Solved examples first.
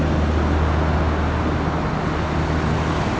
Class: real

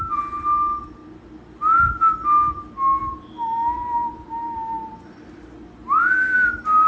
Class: real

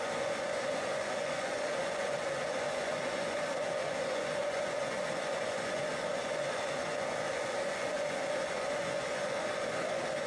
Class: fake